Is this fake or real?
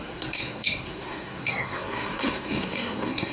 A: fake